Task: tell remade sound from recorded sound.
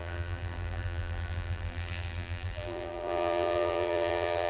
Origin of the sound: remade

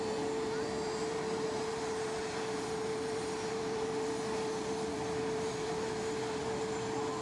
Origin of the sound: recorded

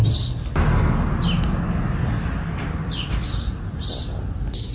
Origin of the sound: recorded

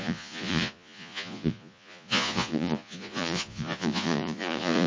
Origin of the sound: remade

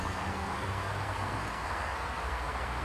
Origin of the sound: remade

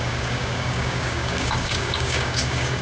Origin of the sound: remade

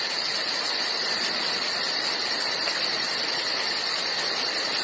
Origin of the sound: recorded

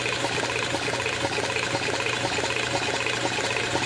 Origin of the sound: recorded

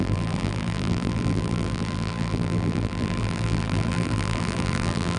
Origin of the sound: remade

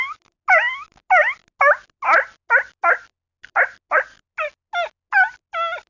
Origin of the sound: recorded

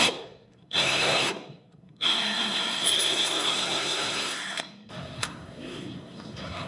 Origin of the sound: remade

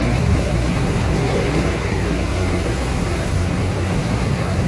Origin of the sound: remade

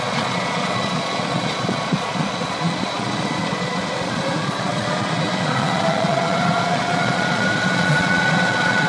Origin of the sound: remade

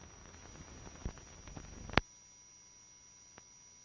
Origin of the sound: recorded